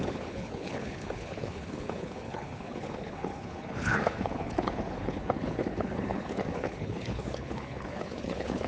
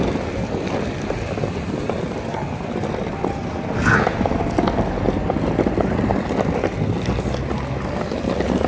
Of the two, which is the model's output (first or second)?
first